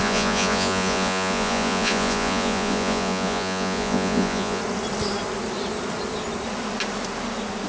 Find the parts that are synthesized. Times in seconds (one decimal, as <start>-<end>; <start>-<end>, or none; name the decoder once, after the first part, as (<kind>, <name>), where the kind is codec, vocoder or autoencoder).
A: 0.0-4.6 (vocoder, Vocos)